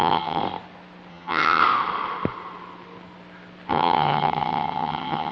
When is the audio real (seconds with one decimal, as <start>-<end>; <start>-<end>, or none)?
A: 0.4-1.1; 1.6-3.7